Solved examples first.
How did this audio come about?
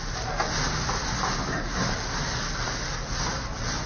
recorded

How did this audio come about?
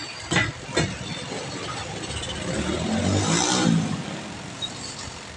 recorded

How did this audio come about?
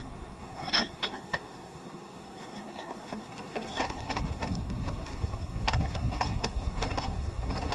remade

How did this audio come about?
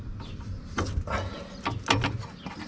recorded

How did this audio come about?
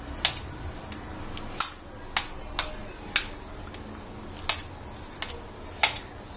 recorded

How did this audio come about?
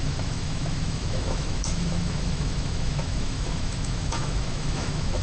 remade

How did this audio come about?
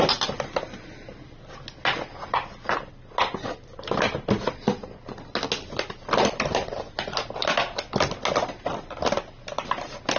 recorded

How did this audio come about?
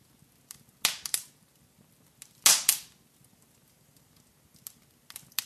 recorded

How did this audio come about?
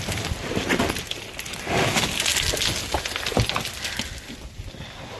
recorded